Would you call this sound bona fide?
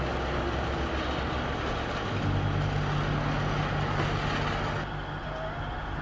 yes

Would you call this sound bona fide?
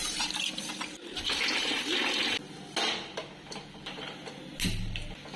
yes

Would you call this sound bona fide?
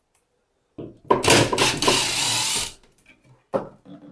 yes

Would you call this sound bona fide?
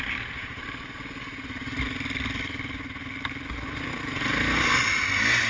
yes